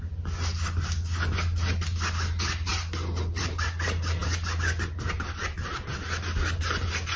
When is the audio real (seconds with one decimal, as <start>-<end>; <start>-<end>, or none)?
0.0-7.2